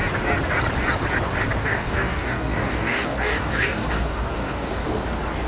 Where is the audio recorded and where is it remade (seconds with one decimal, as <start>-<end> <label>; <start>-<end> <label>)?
0.0-1.6 recorded; 1.6-4.9 remade; 4.9-5.5 recorded